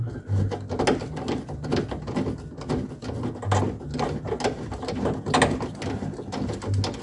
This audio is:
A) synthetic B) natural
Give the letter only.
B